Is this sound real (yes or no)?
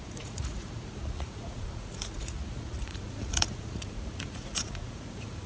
no